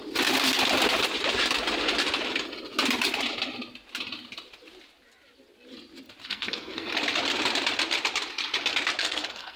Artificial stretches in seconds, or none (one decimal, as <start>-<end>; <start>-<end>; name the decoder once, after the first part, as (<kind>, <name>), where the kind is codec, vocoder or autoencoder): 6.2-6.9 (codec, SNAC); 9.0-9.6